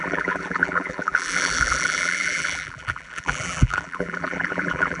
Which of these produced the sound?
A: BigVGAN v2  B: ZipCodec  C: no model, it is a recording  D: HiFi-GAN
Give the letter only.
A